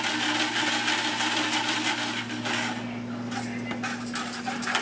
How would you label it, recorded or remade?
recorded